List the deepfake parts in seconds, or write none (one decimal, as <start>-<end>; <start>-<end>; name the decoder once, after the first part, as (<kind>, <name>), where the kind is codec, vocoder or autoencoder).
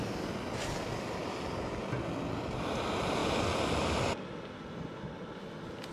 none